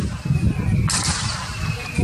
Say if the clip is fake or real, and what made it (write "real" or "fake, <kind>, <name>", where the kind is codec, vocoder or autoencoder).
real